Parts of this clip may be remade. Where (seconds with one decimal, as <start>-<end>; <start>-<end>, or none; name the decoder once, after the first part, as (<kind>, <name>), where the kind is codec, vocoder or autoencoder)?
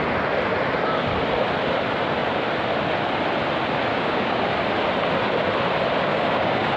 3.9-4.4 (codec, DAC); 6.1-6.8